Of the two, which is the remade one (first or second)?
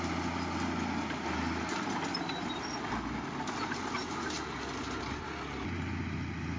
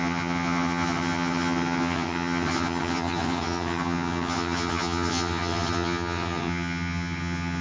second